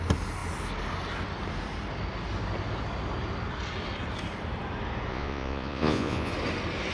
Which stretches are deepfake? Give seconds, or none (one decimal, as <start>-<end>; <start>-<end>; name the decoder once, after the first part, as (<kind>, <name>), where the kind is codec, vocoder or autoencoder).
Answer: 5.1-6.3 (vocoder, Vocos)